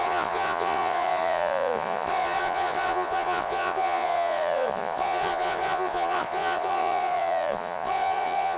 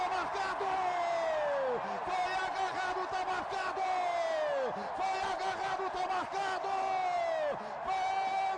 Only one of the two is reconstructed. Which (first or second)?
first